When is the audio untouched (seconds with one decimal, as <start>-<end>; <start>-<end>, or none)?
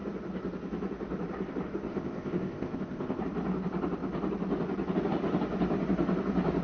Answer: 0.0-1.9; 3.2-6.6